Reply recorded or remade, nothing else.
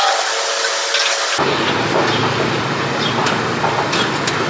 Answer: recorded